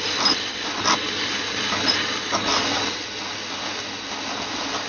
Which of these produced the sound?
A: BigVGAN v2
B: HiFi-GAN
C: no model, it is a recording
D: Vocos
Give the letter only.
C